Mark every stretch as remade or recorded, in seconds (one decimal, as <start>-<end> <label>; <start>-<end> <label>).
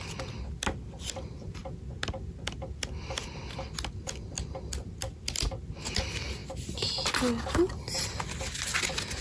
0.0-9.2 recorded